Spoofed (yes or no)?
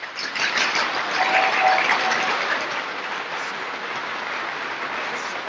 no